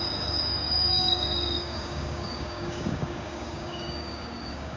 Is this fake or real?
fake